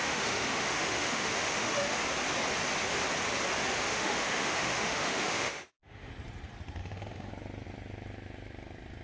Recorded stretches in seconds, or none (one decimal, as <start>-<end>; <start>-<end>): 2.0-3.7; 6.1-6.8; 7.3-9.0